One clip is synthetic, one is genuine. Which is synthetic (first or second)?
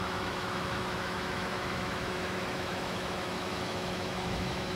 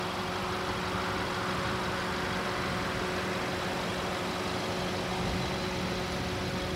first